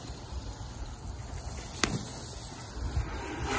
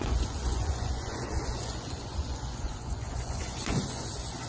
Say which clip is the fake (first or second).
second